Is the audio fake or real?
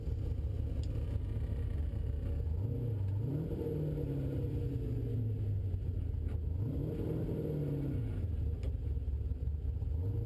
real